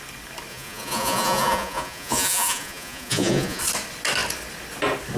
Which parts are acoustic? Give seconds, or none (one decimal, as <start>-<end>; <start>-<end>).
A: 0.0-0.5; 3.6-5.2

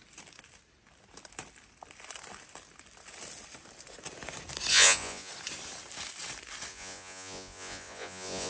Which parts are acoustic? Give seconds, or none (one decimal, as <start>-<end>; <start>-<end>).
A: 0.0-4.7; 5.3-6.7